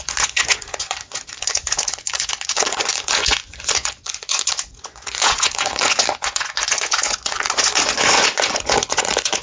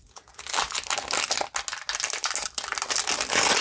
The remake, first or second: first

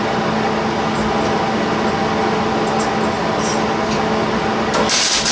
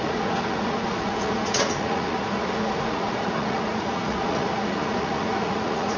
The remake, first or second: second